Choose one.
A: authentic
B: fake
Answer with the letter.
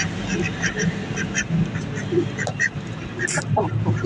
A